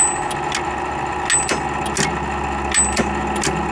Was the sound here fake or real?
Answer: real